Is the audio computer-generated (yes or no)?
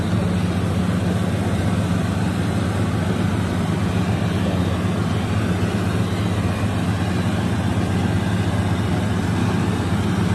no